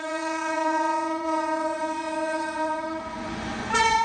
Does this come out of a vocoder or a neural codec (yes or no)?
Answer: yes